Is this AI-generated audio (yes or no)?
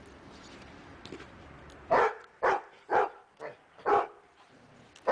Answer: yes